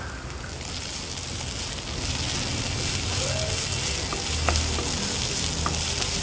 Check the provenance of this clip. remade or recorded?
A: recorded